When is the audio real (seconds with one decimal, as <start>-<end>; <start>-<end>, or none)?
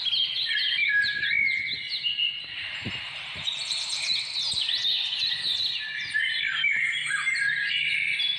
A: 0.0-8.4